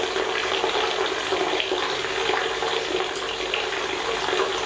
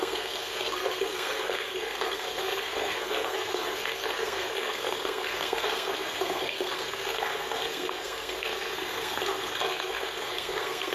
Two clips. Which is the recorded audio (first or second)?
first